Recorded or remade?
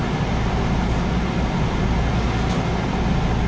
recorded